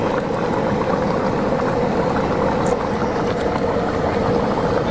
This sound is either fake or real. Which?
real